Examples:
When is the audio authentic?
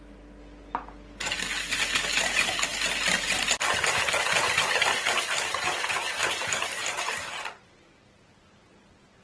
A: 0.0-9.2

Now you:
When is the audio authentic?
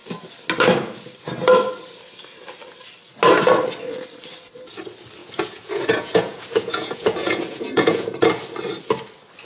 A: 0.0-5.2; 8.3-9.5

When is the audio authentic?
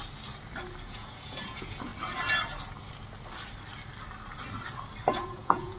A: 0.0-0.8; 1.9-5.1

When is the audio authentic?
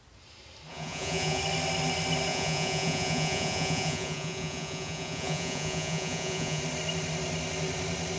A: 0.0-0.7; 1.4-2.3; 6.6-8.2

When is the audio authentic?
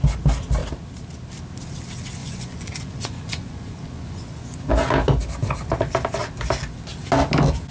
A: 0.0-2.2; 4.7-7.7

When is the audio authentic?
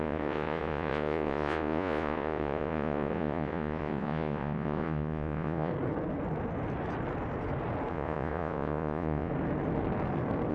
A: 5.7-7.9; 9.3-10.5